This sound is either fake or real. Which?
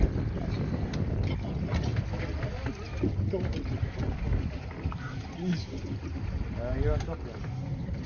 real